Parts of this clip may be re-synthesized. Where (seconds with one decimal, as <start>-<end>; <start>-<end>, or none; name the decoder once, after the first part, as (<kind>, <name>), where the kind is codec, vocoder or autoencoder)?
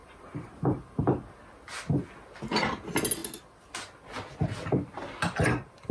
0.0-1.1 (vocoder, BigVGAN v2)